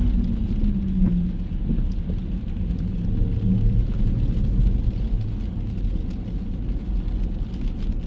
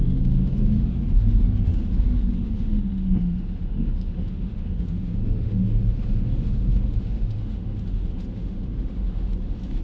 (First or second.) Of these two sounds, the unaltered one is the first